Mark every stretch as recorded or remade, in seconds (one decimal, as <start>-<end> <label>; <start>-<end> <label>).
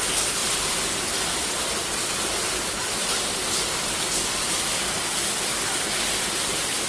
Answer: 0.0-0.4 recorded; 0.4-1.5 remade; 1.5-6.9 recorded